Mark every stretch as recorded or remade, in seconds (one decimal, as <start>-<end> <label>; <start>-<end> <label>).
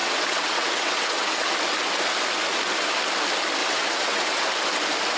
0.0-1.5 remade; 1.5-3.6 recorded; 3.6-4.4 remade; 4.4-5.2 recorded